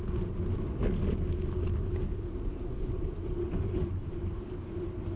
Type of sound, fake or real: real